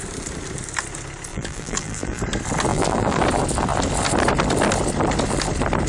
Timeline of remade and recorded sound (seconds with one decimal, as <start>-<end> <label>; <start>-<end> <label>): 0.0-1.3 recorded; 1.3-2.2 remade; 2.2-2.7 recorded; 2.7-3.2 remade; 3.2-5.9 recorded